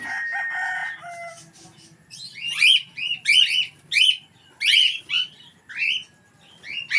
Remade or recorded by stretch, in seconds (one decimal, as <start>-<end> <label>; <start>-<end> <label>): 0.0-7.0 recorded